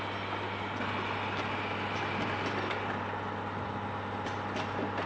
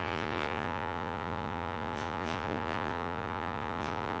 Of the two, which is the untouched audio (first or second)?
first